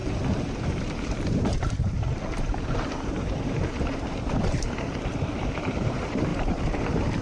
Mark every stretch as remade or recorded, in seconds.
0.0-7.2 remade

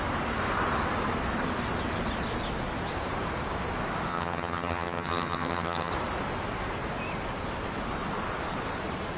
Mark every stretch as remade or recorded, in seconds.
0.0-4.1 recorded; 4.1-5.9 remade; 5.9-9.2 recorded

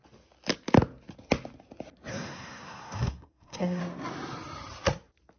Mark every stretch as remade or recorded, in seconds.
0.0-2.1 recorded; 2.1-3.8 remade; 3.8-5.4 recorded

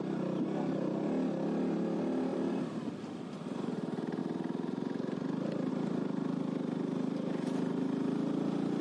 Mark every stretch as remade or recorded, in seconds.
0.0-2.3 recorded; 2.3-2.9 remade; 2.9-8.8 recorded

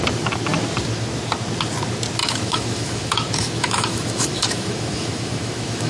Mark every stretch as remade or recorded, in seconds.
0.0-2.2 recorded; 2.2-5.9 remade

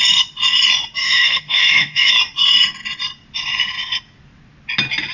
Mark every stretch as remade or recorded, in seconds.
0.0-1.0 recorded; 1.0-2.1 remade; 2.1-5.1 recorded

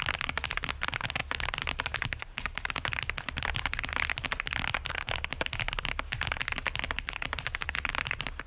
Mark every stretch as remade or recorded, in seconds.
0.0-8.5 recorded